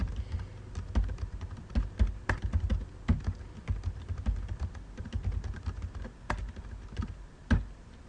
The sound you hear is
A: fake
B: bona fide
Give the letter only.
B